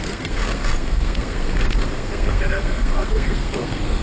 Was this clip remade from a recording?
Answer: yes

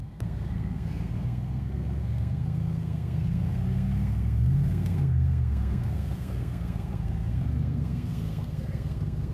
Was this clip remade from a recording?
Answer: yes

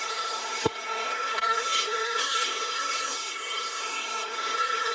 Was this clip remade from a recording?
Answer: yes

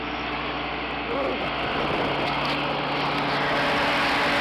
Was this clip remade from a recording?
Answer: no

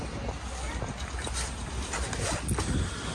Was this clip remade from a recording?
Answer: no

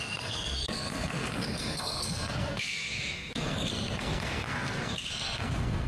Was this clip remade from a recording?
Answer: yes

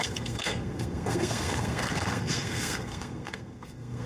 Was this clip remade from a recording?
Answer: yes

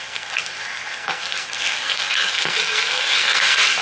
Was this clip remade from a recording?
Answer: yes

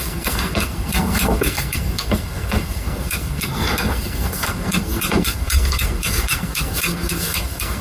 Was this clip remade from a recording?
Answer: yes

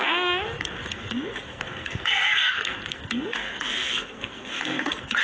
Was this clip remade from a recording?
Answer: yes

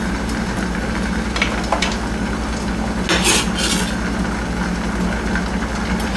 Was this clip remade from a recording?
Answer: no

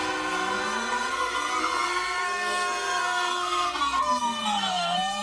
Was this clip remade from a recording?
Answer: yes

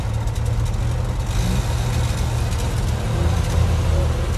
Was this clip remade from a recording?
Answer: no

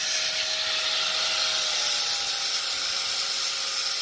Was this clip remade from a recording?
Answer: no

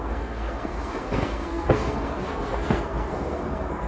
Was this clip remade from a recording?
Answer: yes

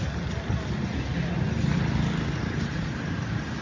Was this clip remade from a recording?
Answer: no